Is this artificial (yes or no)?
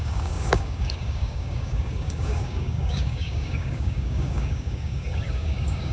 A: yes